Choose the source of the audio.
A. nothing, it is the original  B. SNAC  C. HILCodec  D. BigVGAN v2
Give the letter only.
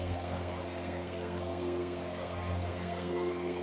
B